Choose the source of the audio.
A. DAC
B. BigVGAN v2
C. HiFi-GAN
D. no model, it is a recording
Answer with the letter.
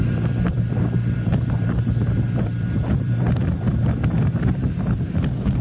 B